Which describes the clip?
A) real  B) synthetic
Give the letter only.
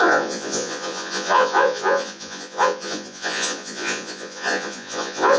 B